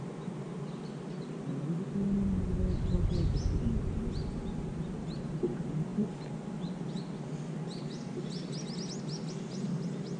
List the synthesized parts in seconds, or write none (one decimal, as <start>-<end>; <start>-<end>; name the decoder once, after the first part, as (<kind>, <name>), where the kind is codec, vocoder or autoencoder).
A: none